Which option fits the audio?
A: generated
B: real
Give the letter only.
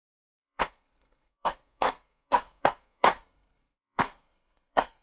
A